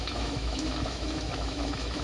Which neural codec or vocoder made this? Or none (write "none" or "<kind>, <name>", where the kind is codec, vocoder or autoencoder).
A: autoencoder, DAC-VAE